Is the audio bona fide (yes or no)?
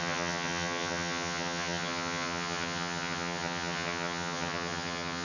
no